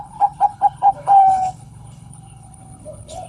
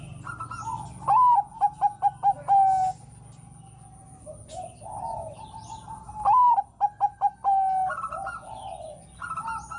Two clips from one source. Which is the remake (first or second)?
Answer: first